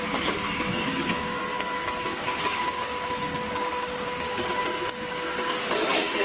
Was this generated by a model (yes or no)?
yes